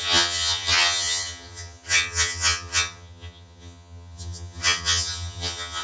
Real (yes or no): no